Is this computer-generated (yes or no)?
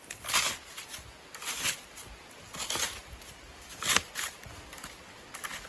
no